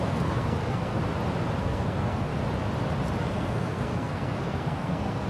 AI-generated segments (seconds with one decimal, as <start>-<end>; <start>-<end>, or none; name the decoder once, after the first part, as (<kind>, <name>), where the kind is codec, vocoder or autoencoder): 0.0-1.0 (codec, SNAC); 1.6-2.3; 3.2-5.3